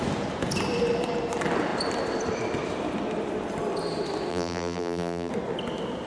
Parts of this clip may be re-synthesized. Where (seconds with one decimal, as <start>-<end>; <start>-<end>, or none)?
4.3-5.3